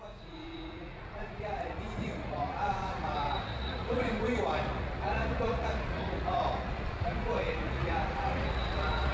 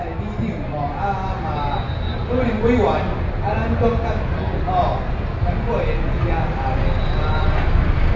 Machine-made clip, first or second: first